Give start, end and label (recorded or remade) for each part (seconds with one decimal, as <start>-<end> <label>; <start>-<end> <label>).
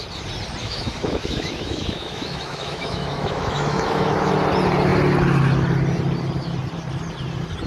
0.0-0.6 recorded; 0.6-4.3 remade; 4.3-7.7 recorded